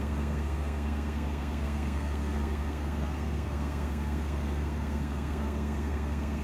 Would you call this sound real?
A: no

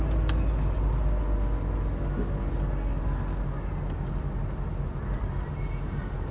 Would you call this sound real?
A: yes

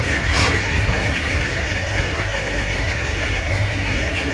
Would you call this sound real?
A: no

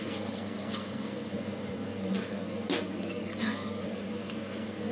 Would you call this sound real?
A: no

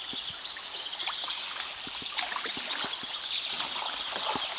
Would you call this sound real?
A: yes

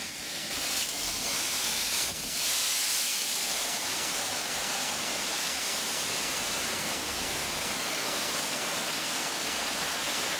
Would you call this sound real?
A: no